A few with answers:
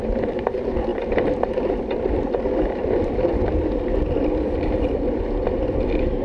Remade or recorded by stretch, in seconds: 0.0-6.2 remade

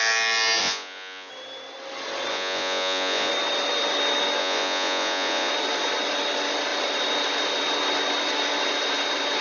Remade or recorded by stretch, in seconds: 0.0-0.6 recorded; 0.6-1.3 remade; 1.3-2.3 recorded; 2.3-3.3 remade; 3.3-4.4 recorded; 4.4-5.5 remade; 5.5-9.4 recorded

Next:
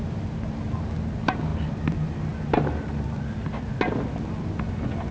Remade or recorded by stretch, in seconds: 0.0-5.1 recorded

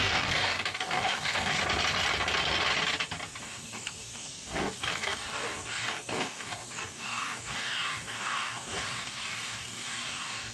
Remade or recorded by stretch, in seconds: 0.0-1.6 remade; 1.6-3.4 recorded; 3.4-10.5 remade